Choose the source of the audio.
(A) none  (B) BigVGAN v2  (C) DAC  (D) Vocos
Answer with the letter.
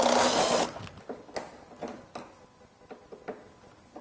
A